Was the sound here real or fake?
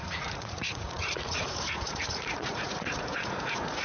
fake